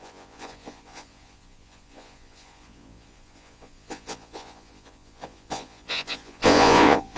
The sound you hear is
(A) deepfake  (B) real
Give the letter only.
A